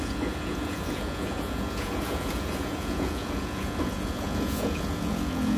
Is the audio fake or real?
fake